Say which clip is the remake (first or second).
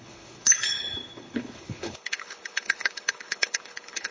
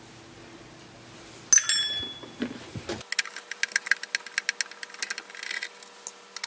first